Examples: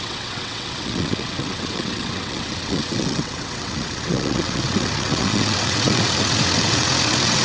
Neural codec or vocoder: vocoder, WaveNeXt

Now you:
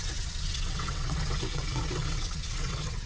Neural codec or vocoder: vocoder, WaveNeXt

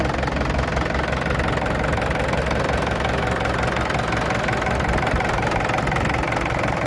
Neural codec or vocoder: none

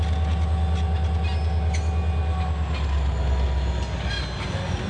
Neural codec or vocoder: none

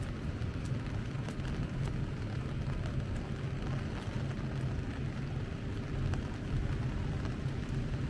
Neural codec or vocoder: none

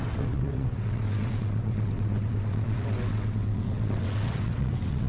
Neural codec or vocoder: vocoder, WaveNeXt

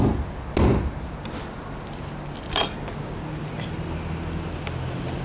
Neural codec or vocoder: none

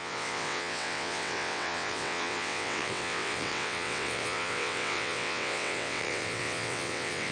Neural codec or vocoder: vocoder, WaveNeXt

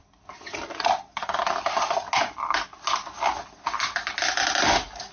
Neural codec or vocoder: none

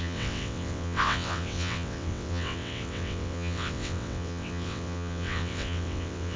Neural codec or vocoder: vocoder, WaveNeXt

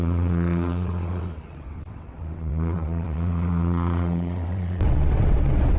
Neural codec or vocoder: vocoder, WaveNeXt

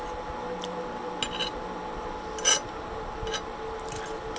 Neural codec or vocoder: none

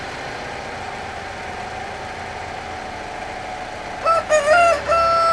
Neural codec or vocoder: none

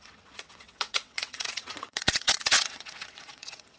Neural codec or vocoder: vocoder, WaveNeXt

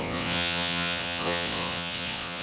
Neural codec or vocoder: vocoder, WaveNeXt